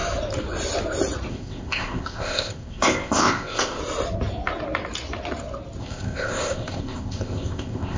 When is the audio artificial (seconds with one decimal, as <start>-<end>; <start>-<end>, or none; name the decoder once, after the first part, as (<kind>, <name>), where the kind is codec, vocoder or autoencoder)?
1.3-3.8 (codec, ZipCodec); 5.8-8.0